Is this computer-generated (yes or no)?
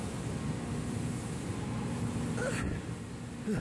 no